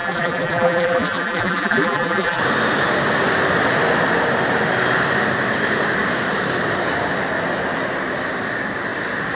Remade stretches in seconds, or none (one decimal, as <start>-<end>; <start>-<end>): 0.0-2.4